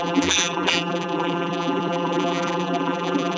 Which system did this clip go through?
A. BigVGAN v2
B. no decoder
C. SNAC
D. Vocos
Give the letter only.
A